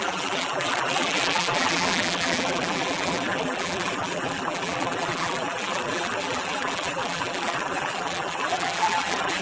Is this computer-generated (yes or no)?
yes